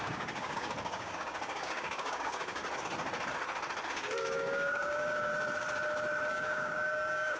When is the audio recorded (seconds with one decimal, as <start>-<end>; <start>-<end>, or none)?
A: 2.6-3.9; 5.3-6.3